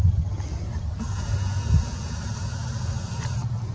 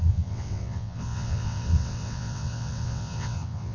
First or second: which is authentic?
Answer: first